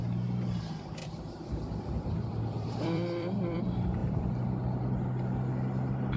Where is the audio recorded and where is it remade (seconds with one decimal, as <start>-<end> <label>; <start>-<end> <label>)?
0.0-1.0 recorded; 1.0-3.6 remade; 3.6-4.0 recorded; 4.0-4.9 remade; 4.9-6.2 recorded